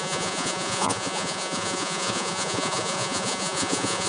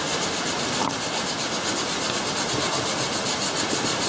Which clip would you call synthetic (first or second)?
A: first